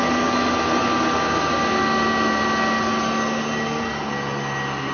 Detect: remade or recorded recorded